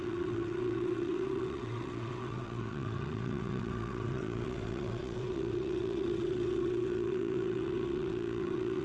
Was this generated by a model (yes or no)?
yes